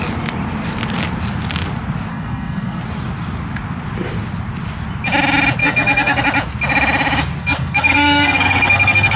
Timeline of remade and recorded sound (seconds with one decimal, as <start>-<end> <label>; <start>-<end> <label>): 0.0-2.1 recorded; 2.1-2.8 remade; 2.8-5.6 recorded; 5.6-6.2 remade; 6.2-7.4 recorded; 7.4-9.2 remade